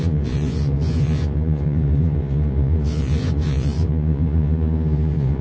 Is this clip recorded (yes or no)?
no